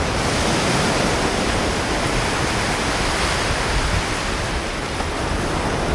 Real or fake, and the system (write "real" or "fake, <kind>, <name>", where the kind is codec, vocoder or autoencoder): real